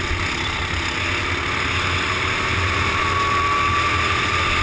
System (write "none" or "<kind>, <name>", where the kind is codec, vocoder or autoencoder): none